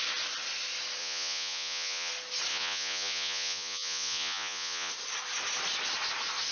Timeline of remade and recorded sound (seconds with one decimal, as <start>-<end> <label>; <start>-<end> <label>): 0.0-1.0 recorded; 1.0-2.1 remade; 2.1-2.5 recorded; 2.5-4.9 remade; 4.9-6.5 recorded